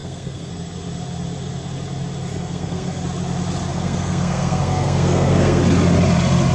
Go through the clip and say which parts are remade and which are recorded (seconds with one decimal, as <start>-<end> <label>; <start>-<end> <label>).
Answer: 0.0-0.5 remade; 0.5-2.3 recorded; 2.3-3.0 remade; 3.0-3.7 recorded; 3.7-5.6 remade; 5.6-6.5 recorded